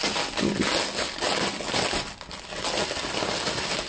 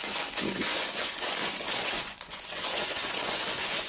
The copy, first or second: second